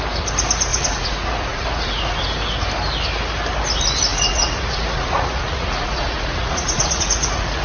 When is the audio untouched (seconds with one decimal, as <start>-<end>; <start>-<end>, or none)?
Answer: 0.0-0.7; 2.2-4.1